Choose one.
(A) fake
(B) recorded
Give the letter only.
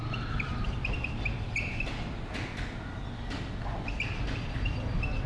B